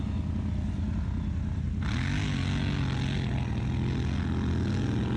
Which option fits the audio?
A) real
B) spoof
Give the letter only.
A